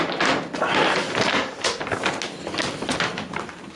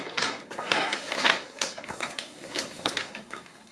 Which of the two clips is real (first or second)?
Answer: first